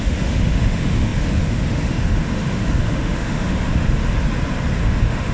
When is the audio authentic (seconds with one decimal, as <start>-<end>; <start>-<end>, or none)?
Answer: 4.0-4.8